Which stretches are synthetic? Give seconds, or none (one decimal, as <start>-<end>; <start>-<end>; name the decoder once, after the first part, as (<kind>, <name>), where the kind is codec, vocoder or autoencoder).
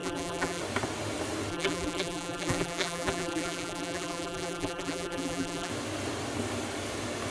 0.0-0.6 (vocoder, BigVGAN v2); 1.5-5.7